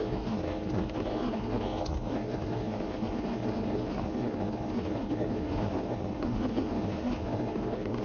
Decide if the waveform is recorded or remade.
remade